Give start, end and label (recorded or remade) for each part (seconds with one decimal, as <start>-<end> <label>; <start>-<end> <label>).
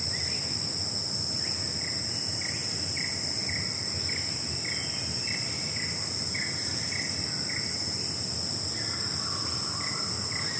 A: 0.0-2.6 recorded; 2.6-3.9 remade; 3.9-10.6 recorded